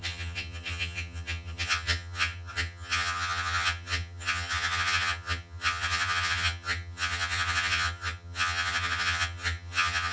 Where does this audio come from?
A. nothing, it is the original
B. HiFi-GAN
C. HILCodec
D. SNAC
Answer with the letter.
B